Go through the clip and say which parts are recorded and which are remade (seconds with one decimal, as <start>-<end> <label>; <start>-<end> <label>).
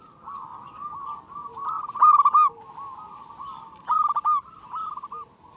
0.0-5.6 recorded